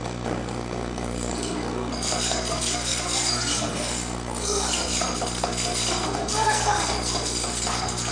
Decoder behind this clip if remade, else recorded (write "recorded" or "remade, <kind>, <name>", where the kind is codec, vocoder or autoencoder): remade, codec, SNAC